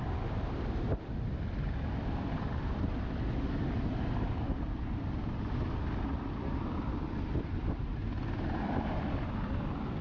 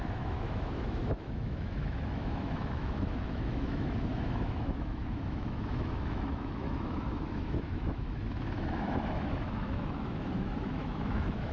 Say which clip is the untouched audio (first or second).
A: first